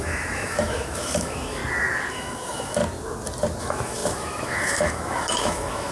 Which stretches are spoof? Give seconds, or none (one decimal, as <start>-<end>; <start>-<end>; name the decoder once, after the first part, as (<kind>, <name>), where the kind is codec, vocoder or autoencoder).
0.0-1.6 (autoencoder, DAC-VAE); 2.1-2.8; 3.6-5.9